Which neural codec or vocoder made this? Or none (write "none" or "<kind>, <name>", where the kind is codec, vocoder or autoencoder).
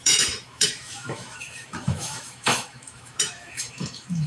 autoencoder, DAC-VAE